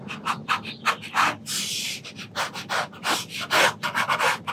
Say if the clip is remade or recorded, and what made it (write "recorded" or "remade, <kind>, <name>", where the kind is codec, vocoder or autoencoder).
recorded